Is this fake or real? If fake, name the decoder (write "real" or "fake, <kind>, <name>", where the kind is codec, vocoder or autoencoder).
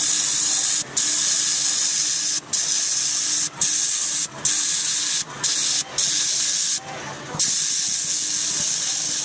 real